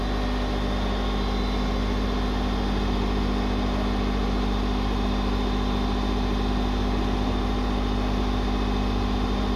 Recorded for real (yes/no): yes